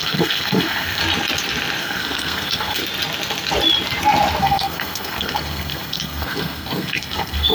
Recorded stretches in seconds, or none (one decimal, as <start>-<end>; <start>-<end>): 1.0-1.8; 2.8-4.4